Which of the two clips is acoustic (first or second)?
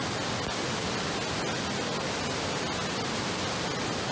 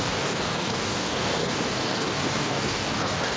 first